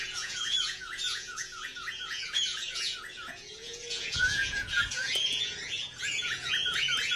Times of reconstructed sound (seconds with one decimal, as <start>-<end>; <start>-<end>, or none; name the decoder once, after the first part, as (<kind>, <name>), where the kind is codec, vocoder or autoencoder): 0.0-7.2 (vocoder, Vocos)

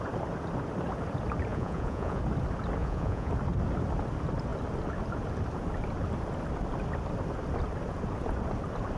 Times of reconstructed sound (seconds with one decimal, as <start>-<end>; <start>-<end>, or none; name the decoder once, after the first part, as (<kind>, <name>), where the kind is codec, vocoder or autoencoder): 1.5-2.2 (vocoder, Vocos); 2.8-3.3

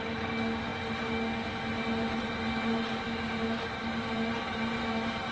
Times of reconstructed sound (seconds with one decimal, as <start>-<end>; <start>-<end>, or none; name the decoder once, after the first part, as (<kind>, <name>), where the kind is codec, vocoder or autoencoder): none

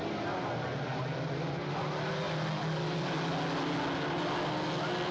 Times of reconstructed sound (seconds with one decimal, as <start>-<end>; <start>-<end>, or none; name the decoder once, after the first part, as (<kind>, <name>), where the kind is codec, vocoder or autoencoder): none

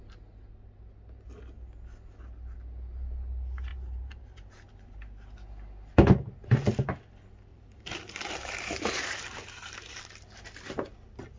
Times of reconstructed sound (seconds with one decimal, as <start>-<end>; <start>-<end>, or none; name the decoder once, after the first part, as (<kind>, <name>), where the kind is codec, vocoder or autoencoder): 3.7-4.5 (vocoder, BigVGAN v2); 7.5-10.0

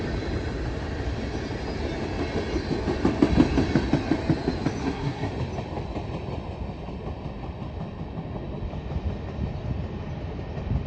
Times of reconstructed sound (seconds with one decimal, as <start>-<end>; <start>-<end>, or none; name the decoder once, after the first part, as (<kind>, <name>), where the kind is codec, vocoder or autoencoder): 4.8-5.3 (codec, SNAC)